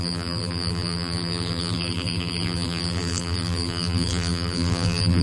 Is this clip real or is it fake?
fake